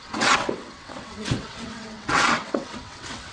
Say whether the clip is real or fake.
fake